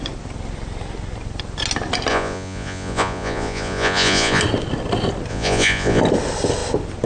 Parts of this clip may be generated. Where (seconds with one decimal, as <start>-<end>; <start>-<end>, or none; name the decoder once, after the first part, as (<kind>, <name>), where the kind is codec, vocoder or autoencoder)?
2.1-4.4 (vocoder, Vocos); 5.3-6.0